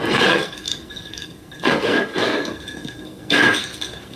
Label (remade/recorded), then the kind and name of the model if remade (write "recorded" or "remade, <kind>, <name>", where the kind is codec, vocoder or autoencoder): remade, codec, SNAC